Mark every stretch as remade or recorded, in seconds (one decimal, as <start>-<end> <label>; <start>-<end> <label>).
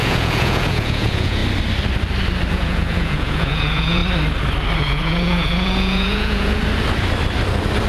0.0-1.4 remade; 1.4-2.5 recorded; 2.5-4.0 remade; 4.0-4.8 recorded; 4.8-6.6 remade; 6.6-7.9 recorded